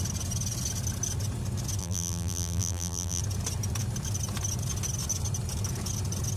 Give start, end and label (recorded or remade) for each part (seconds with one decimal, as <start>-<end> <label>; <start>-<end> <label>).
0.0-1.8 recorded; 1.8-3.2 remade; 3.2-6.4 recorded